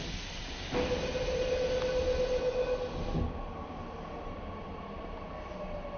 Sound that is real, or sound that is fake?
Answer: real